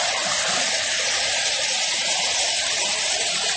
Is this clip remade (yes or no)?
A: yes